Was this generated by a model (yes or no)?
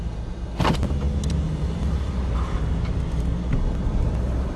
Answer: no